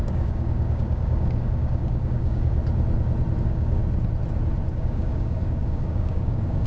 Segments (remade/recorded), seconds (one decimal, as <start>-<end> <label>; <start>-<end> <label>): 0.0-2.6 remade; 2.6-3.4 recorded; 3.4-3.8 remade; 3.8-4.7 recorded; 4.7-6.7 remade